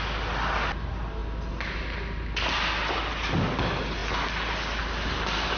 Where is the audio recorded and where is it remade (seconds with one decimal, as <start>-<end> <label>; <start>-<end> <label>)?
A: 0.0-5.6 recorded